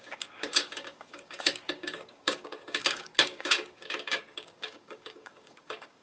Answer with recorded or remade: remade